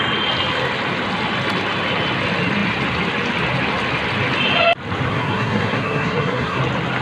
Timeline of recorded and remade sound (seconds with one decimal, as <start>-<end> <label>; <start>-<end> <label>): 0.0-5.1 recorded; 5.1-6.6 remade; 6.6-7.0 recorded